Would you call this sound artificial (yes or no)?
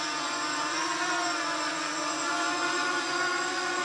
yes